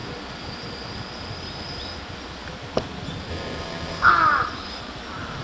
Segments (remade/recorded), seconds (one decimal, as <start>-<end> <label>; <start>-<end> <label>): 0.0-3.3 recorded; 3.3-4.1 remade; 4.1-5.4 recorded